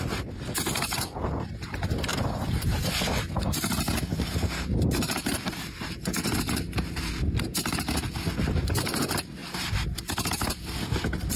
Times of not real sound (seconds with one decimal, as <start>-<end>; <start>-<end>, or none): 2.1-3.6; 4.1-7.1; 7.5-8.1; 9.4-10.6